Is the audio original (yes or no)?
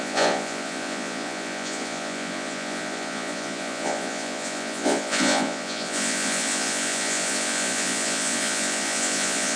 no